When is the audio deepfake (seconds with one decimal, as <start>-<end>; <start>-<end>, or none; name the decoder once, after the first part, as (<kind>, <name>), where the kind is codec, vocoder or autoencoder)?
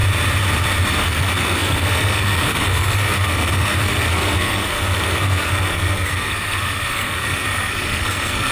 0.9-8.5 (codec, SNAC)